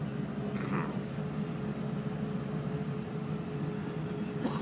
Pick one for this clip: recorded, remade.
recorded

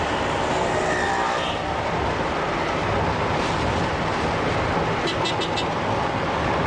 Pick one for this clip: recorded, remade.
recorded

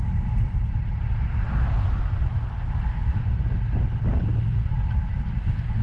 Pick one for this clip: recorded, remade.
recorded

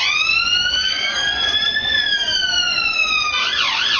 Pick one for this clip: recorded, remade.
remade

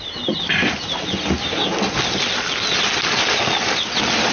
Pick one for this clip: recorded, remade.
recorded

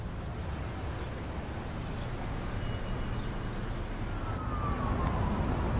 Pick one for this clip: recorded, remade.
recorded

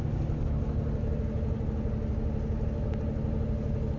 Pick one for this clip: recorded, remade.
recorded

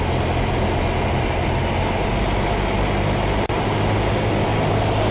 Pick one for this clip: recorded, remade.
recorded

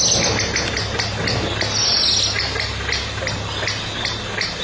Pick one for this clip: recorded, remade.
recorded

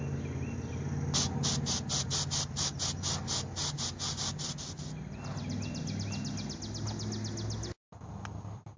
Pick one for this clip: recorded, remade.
recorded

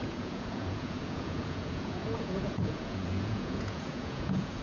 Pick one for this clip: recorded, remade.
remade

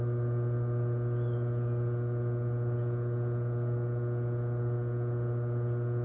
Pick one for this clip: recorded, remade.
recorded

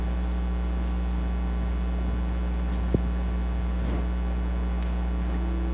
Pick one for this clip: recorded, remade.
recorded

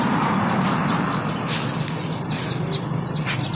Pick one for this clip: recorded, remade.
recorded